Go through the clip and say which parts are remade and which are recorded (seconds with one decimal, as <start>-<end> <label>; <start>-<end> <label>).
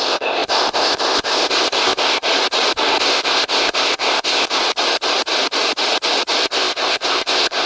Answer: 0.0-2.3 remade; 2.3-3.0 recorded; 3.0-4.6 remade; 4.6-6.4 recorded; 6.4-7.7 remade